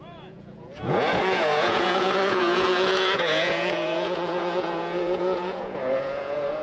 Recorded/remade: remade